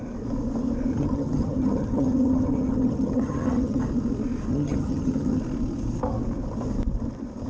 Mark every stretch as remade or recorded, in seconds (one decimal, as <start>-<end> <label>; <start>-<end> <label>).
0.0-0.9 recorded; 0.9-3.8 remade; 3.8-4.5 recorded; 4.5-5.4 remade; 5.4-7.5 recorded